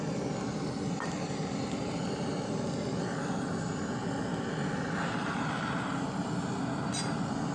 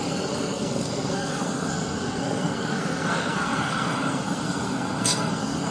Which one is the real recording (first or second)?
first